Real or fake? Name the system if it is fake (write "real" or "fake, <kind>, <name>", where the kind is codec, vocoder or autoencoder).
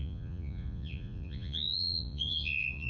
fake, vocoder, Vocos